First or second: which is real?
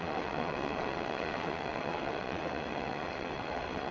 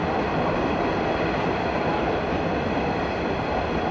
second